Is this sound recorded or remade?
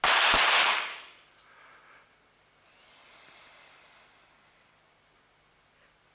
recorded